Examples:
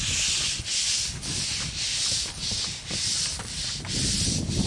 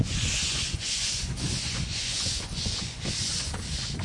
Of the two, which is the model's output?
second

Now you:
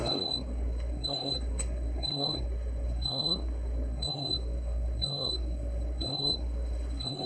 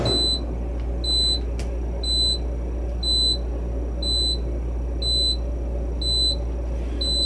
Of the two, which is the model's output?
first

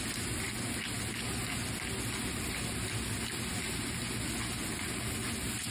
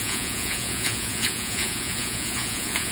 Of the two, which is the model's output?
second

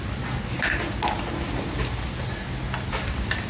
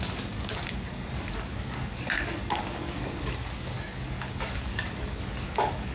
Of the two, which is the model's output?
second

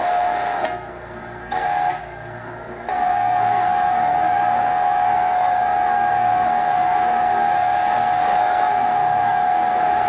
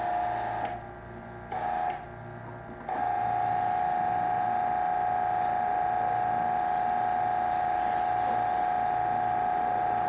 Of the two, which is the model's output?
first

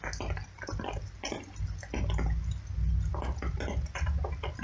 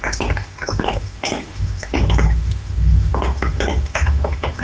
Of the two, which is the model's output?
second